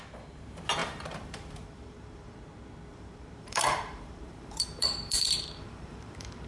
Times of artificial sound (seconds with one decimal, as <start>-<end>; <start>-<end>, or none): 0.8-2.4; 2.9-6.5